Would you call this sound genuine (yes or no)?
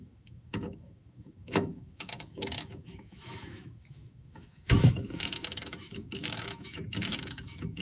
no